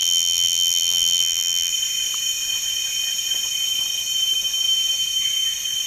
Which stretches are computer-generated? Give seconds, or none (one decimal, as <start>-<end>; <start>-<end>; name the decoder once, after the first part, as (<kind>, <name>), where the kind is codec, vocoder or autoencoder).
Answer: 0.0-1.7 (vocoder, BigVGAN v2)